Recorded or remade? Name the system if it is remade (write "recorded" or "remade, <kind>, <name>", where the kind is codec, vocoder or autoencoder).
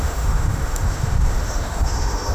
remade, autoencoder, DAC-VAE